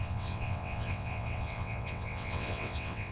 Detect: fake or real fake